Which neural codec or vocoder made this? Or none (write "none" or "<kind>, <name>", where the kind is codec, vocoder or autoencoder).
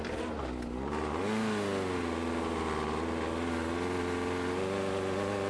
none